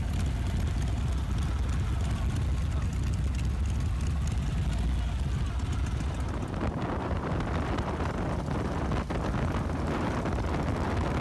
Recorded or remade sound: recorded